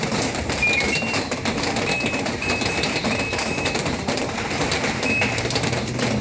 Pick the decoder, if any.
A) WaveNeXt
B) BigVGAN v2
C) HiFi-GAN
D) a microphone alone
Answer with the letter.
B